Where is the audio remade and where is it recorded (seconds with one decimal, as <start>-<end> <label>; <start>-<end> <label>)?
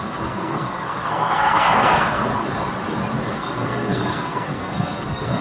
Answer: 0.0-2.3 remade; 2.3-3.3 recorded; 3.3-5.4 remade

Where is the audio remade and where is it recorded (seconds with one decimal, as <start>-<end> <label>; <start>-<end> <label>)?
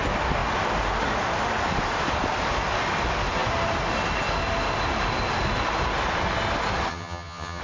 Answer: 0.0-6.9 recorded; 6.9-7.6 remade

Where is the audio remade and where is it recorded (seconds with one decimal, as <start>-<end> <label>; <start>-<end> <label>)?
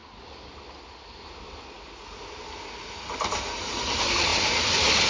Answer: 0.0-5.1 recorded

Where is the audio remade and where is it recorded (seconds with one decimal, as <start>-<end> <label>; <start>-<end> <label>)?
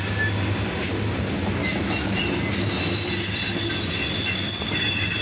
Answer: 0.0-1.6 recorded; 1.6-2.2 remade; 2.2-5.2 recorded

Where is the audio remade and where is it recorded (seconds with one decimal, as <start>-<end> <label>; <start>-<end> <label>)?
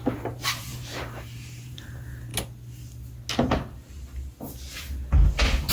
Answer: 0.0-2.3 remade; 2.3-5.7 recorded